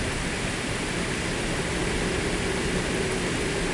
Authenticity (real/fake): real